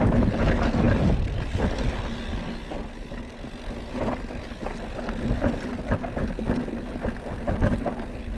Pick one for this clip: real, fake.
real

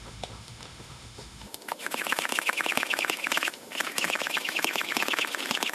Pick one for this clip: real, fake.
fake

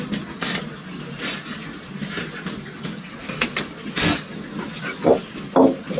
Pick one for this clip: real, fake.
real